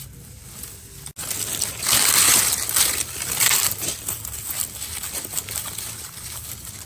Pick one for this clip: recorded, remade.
recorded